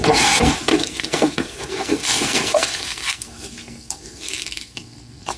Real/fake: fake